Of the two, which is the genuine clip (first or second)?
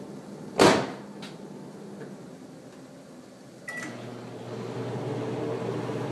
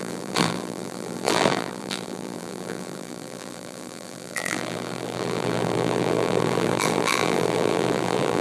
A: first